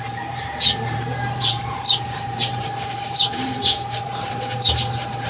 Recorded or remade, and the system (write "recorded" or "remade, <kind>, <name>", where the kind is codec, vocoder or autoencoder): remade, vocoder, BigVGAN v2